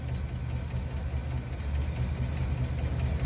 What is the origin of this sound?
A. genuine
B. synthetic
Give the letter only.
A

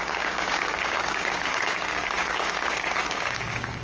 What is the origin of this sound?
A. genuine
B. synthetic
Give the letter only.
B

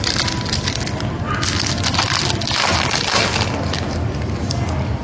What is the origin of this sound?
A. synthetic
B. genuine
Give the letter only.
B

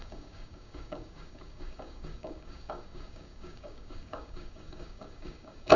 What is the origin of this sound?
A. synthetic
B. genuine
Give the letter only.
A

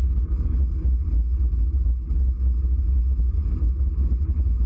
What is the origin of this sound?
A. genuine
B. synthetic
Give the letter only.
A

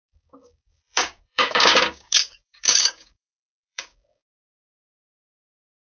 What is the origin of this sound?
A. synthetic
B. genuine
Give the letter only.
A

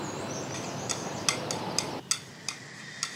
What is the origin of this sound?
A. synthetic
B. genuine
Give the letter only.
B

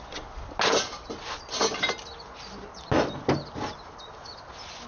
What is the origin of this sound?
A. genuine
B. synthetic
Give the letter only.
A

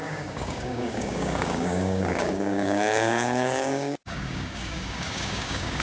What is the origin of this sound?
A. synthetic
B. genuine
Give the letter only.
A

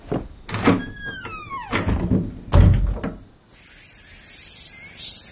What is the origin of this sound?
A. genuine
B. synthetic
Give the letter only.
A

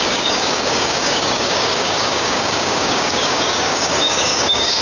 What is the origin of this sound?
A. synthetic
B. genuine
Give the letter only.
A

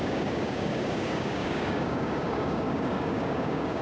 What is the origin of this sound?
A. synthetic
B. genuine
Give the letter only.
A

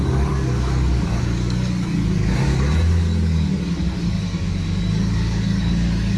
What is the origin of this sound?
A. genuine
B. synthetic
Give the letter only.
B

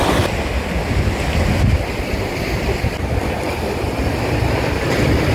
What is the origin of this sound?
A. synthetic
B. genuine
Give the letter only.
B